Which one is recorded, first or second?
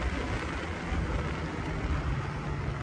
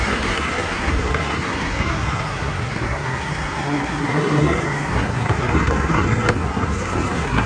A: first